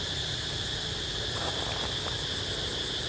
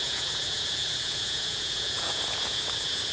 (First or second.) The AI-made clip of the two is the second